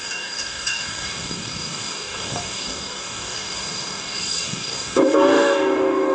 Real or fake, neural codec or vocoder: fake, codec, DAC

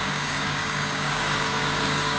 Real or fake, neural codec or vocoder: fake, codec, DAC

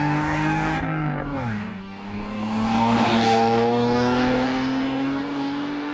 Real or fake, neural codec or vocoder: fake, codec, DAC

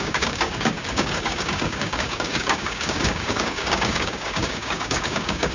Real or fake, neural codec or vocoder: fake, codec, DAC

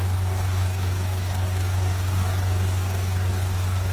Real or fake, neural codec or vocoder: fake, codec, DAC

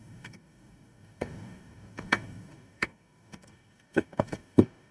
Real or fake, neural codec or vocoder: fake, codec, DAC